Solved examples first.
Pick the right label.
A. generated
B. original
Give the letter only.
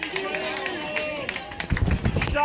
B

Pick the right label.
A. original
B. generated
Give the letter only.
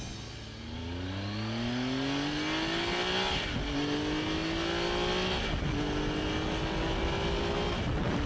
A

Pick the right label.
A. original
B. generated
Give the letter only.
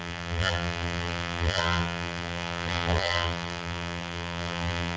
B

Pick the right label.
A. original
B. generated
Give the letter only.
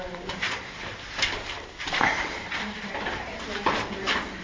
B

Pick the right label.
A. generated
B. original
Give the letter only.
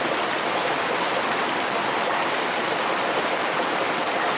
A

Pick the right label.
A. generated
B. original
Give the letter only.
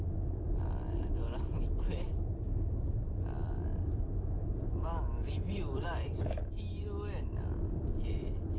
A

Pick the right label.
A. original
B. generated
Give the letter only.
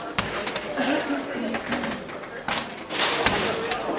B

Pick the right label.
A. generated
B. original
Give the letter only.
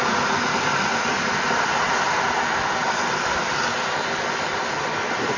B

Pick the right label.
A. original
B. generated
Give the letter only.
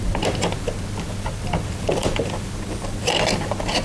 B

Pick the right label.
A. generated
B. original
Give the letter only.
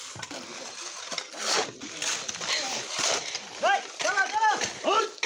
B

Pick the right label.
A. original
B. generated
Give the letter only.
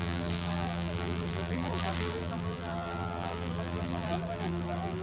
B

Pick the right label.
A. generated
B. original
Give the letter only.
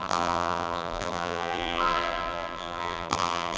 A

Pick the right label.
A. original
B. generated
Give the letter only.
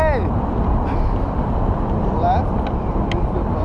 A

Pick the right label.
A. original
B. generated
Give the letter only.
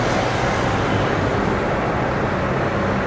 A